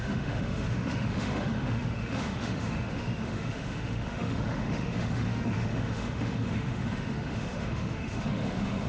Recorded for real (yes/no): no